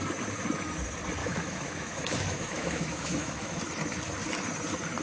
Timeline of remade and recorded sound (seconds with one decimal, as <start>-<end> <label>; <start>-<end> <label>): 0.0-1.2 recorded; 1.2-3.6 remade; 3.6-5.0 recorded